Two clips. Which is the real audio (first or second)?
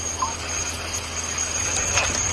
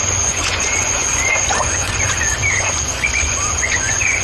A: first